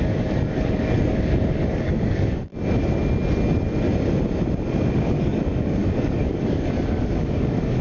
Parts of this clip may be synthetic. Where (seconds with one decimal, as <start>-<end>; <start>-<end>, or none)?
0.0-2.5; 4.9-7.8